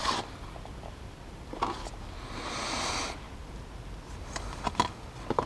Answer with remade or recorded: recorded